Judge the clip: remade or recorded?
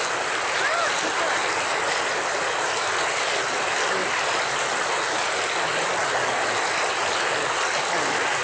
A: recorded